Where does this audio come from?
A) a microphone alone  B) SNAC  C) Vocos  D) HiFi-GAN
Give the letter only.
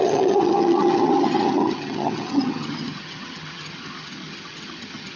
D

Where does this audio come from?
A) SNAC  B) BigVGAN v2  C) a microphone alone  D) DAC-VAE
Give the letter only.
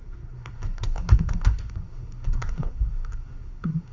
A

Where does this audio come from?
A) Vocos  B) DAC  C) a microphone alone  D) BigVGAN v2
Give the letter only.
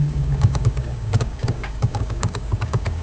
B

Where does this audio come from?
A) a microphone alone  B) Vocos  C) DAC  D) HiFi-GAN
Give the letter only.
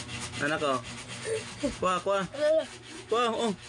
A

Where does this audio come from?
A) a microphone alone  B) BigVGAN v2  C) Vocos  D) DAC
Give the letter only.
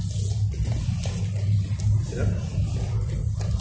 A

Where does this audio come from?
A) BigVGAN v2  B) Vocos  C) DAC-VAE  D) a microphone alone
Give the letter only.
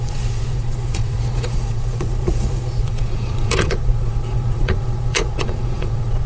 B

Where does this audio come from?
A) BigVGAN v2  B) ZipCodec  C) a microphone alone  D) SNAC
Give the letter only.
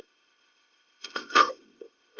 B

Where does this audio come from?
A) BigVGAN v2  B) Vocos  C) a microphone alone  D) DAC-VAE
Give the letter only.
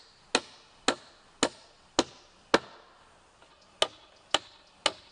C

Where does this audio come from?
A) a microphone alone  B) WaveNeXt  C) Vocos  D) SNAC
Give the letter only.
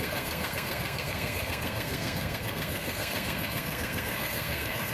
D